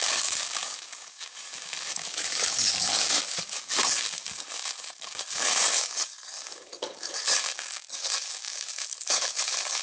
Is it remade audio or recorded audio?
remade